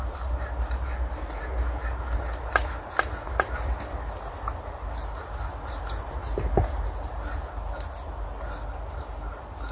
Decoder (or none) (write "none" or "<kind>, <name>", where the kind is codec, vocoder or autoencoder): none